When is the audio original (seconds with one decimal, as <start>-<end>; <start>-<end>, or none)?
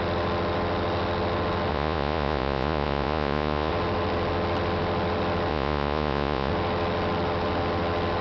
0.0-1.7; 3.7-5.5; 6.5-8.2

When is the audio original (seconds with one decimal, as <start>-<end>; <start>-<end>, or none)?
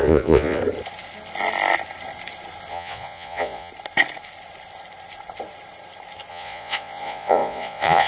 0.6-2.7; 3.7-6.3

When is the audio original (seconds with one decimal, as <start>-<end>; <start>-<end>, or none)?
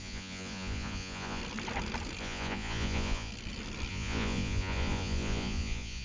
1.4-2.2; 3.3-3.9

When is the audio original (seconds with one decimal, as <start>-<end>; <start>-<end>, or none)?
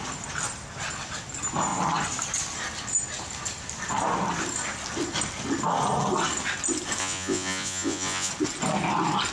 0.0-7.0; 8.3-9.3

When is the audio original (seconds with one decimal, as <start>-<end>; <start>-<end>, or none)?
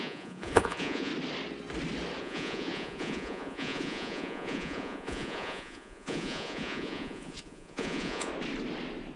1.1-2.2; 8.3-9.2